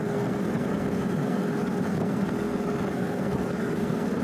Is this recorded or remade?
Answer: remade